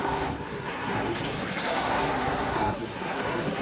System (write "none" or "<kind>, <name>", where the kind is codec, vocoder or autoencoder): codec, SNAC